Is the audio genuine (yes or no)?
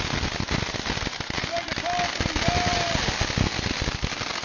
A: yes